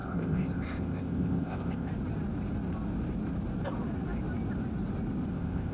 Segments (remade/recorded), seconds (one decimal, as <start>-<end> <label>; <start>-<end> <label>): 0.0-1.9 remade; 1.9-5.3 recorded; 5.3-5.7 remade